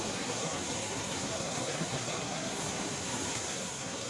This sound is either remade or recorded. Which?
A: remade